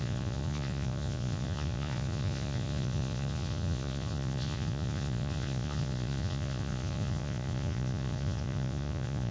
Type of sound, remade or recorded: remade